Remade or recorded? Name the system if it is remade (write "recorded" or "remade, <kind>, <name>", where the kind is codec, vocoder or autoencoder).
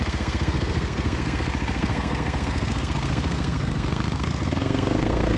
remade, codec, SNAC